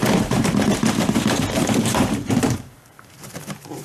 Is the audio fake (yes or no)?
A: yes